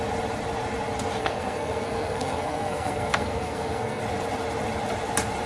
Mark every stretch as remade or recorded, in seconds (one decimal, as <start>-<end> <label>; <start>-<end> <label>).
0.0-1.2 recorded; 1.2-4.0 remade; 4.0-5.5 recorded